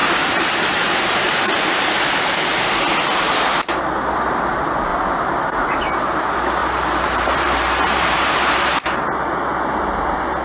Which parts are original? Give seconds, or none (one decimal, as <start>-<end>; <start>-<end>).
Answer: 1.2-4.9; 5.4-6.6; 8.6-10.4